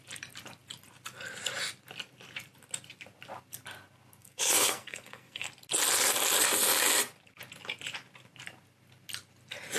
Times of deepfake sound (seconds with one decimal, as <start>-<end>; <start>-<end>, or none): 4.2-5.5